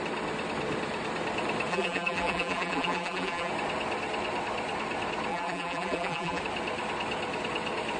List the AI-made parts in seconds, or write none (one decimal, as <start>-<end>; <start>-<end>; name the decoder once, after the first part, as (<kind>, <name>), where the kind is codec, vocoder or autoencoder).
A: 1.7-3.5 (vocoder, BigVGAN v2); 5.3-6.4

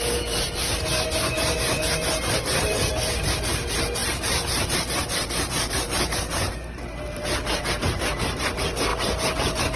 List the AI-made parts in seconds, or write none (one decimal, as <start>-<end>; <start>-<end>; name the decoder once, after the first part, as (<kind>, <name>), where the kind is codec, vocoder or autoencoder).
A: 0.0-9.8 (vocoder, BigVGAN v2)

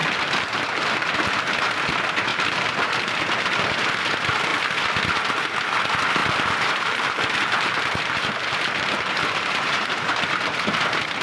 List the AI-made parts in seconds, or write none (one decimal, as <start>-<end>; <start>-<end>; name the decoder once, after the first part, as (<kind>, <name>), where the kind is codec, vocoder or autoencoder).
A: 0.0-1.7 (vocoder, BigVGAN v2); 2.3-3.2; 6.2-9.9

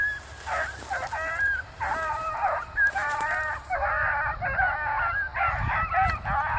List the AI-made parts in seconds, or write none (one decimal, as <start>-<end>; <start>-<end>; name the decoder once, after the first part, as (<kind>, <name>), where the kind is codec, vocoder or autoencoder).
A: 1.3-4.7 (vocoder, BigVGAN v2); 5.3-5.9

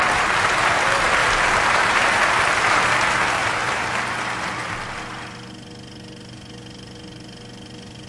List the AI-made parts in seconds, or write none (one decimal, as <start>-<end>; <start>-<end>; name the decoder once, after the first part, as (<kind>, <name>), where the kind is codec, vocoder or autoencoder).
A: 1.2-2.9 (vocoder, BigVGAN v2); 3.4-4.0